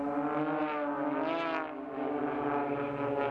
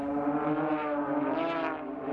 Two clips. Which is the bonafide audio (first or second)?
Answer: first